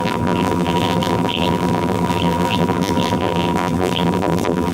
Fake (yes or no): yes